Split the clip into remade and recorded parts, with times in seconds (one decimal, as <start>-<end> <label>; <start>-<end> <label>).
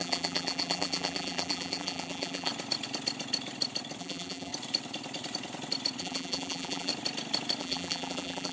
0.0-2.5 remade; 2.5-4.0 recorded; 4.0-4.5 remade; 4.5-6.0 recorded; 6.0-6.9 remade; 6.9-7.6 recorded; 7.6-8.5 remade